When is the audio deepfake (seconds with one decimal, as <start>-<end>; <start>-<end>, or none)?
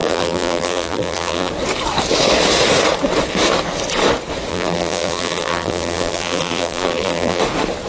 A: 0.0-1.5; 4.5-7.4